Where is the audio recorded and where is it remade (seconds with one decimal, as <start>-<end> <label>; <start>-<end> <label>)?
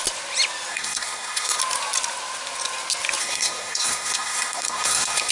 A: 0.0-0.7 recorded; 0.7-1.6 remade; 1.6-3.2 recorded; 3.2-5.3 remade